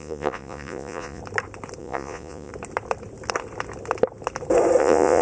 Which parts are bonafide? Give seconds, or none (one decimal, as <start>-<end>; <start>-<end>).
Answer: 1.2-1.8; 2.5-4.8